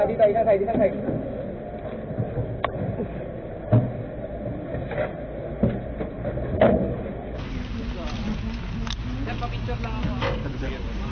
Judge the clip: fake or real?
real